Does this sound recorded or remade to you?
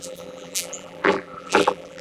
remade